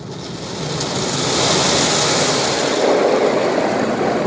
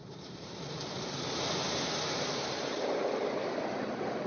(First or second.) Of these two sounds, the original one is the first